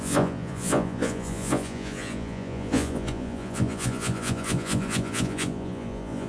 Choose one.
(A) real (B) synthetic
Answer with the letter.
B